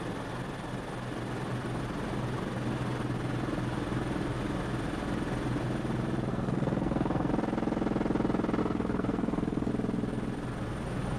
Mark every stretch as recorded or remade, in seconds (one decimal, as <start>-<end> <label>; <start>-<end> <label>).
0.0-6.3 recorded; 6.3-7.3 remade; 7.3-8.6 recorded; 8.6-9.7 remade; 9.7-11.2 recorded